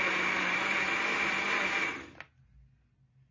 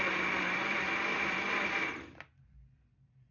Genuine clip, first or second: first